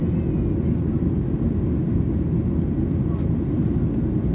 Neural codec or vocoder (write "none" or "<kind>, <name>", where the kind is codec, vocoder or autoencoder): none